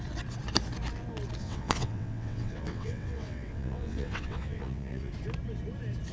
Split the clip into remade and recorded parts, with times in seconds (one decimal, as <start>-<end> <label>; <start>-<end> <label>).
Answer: 0.0-1.4 recorded; 1.4-5.1 remade; 5.1-6.1 recorded